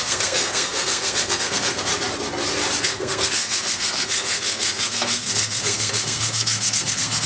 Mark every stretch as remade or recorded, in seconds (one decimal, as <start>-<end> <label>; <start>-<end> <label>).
0.0-1.9 remade; 1.9-2.8 recorded; 2.8-7.3 remade